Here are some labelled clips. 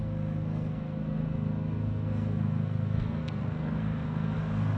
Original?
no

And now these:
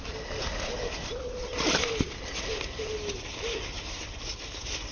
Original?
yes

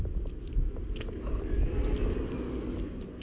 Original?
yes